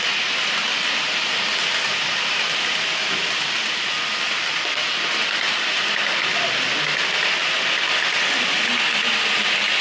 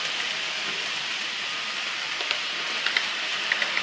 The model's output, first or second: second